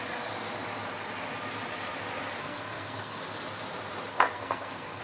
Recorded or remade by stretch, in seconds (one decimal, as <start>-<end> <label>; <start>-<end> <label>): 0.0-2.4 recorded; 2.4-3.2 remade; 3.2-4.1 recorded; 4.1-5.0 remade